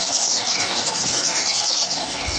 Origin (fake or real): fake